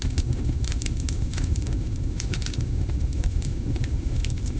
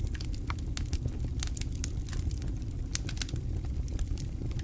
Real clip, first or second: second